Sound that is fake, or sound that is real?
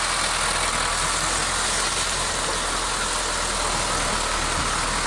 real